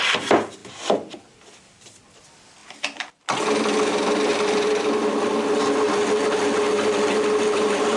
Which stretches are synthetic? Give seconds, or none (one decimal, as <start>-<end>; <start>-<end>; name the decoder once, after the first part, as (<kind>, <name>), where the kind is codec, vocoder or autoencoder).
none